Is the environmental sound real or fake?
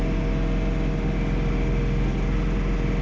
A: real